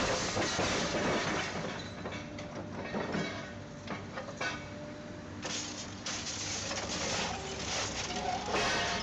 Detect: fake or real real